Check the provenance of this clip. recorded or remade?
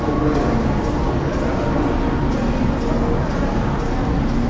recorded